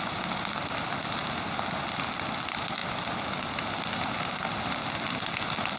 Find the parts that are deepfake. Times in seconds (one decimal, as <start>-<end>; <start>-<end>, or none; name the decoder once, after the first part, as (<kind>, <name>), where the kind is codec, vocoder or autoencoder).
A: none

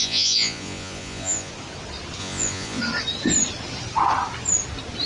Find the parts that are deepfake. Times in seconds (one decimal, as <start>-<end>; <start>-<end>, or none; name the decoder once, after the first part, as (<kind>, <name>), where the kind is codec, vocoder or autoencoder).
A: 0.0-1.5 (vocoder, Vocos); 2.2-2.8

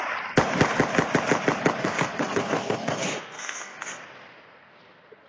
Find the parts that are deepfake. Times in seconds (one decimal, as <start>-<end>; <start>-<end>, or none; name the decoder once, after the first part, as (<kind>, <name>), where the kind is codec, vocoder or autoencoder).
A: 1.8-4.0 (codec, SNAC)

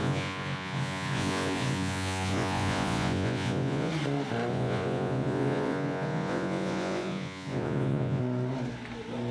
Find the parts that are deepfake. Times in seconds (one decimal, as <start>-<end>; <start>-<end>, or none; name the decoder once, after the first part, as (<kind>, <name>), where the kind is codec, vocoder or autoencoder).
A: 0.0-3.9 (vocoder, Vocos); 4.5-8.2

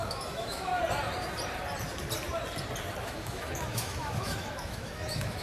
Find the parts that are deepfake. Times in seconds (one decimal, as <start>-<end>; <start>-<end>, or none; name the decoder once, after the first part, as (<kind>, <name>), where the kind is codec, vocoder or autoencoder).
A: 0.0-0.7 (autoencoder, DAC-VAE); 3.0-5.4

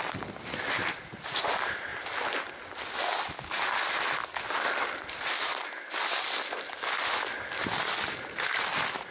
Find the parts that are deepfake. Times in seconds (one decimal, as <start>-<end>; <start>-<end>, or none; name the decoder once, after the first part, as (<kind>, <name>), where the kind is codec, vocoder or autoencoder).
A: none